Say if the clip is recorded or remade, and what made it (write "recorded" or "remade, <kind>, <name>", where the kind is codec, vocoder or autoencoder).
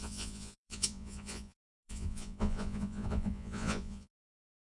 remade, vocoder, Vocos